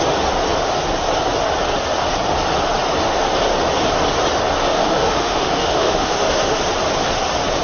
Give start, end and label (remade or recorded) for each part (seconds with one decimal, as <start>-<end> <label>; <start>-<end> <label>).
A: 0.0-4.7 recorded; 4.7-6.6 remade; 6.6-7.6 recorded